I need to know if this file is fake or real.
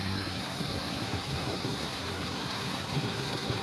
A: fake